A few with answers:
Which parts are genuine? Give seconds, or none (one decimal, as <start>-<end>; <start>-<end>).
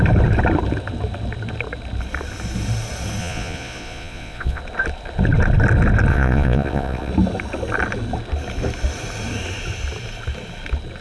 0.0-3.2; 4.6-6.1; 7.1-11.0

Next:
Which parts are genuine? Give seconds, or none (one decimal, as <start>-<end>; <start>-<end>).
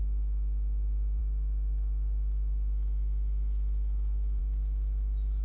0.0-5.4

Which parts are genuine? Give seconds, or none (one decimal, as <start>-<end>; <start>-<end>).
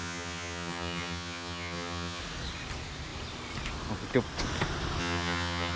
2.2-5.0